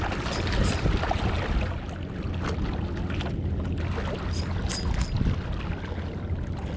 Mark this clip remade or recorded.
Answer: recorded